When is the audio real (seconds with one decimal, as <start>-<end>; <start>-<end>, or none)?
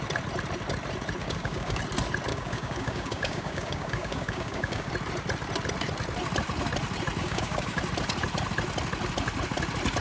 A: 0.0-1.2; 1.8-2.3; 4.9-7.2; 7.8-10.0